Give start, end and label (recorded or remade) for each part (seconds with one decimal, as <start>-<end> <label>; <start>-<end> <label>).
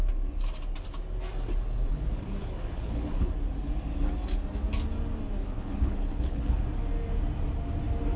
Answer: 0.0-1.9 recorded; 1.9-3.3 remade; 3.3-5.4 recorded; 5.4-6.6 remade; 6.6-8.2 recorded